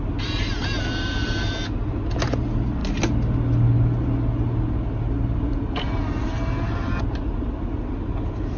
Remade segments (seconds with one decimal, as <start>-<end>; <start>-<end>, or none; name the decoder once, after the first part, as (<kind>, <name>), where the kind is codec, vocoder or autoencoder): none